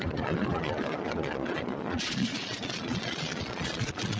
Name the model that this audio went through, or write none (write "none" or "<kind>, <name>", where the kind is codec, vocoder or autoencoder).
vocoder, Vocos